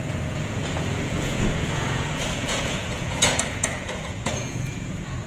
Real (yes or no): no